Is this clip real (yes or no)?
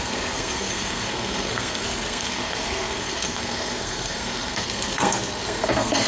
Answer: no